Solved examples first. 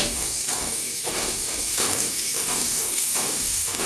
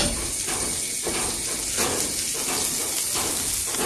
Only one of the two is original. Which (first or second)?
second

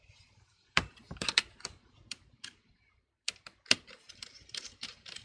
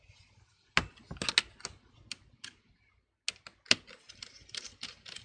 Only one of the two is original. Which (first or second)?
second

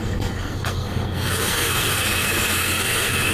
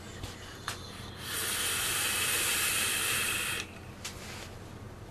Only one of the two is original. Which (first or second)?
second